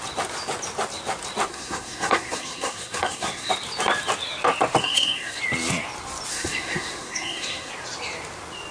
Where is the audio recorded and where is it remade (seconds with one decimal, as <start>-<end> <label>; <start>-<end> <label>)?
0.0-1.5 recorded; 1.5-3.5 remade; 3.5-4.8 recorded; 4.8-5.4 remade; 5.4-6.3 recorded; 6.3-7.7 remade; 7.7-8.7 recorded